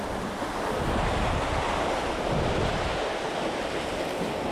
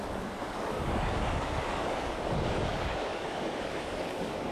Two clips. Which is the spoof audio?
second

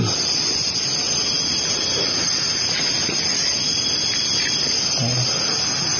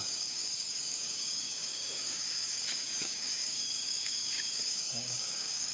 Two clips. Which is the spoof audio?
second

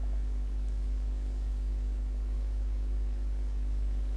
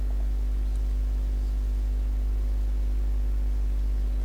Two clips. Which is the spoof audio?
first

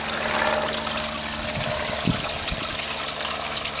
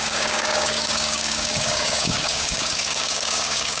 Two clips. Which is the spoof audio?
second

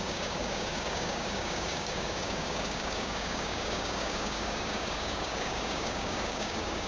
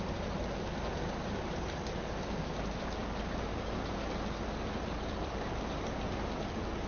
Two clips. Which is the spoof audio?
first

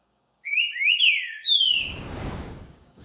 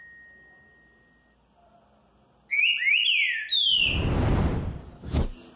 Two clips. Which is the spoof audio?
first